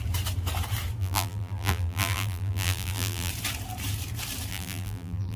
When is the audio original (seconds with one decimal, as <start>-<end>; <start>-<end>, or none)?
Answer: 0.0-1.0; 3.3-4.5